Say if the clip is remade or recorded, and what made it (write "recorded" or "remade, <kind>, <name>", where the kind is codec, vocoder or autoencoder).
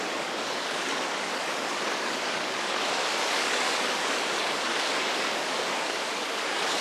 remade, codec, DAC